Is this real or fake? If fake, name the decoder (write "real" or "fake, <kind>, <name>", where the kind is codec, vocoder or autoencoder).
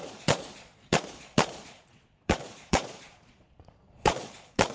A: fake, vocoder, Vocos